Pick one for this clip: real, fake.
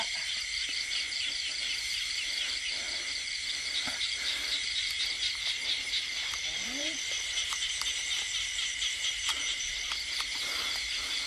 fake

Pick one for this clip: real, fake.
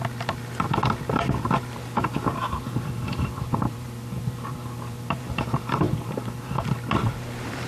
fake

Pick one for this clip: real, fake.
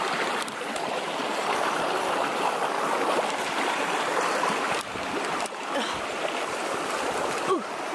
fake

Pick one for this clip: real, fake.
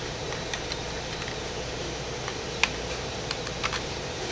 fake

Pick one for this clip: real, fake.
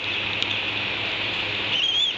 fake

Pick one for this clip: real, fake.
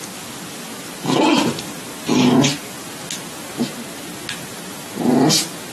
real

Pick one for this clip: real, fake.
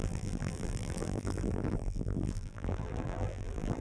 fake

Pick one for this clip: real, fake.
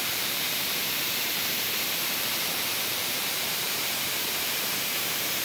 fake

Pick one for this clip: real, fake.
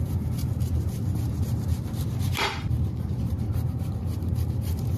fake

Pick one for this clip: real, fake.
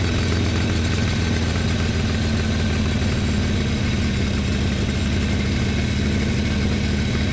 real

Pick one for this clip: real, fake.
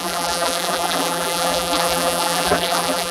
fake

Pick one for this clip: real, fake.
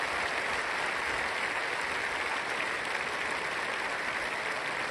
real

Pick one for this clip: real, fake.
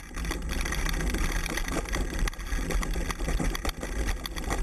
real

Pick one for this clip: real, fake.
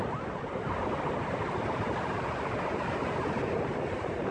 fake